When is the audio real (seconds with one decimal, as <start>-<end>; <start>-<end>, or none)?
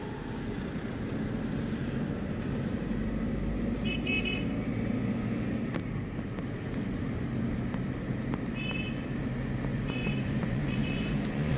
0.0-9.7